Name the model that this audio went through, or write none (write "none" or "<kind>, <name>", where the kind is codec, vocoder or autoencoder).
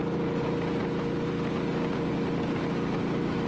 none